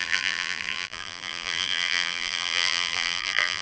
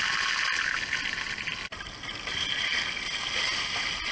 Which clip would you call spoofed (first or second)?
first